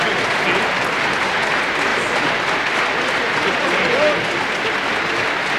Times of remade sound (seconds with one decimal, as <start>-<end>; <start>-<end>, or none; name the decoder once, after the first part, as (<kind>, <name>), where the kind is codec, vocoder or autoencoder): none